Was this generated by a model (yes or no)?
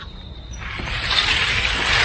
no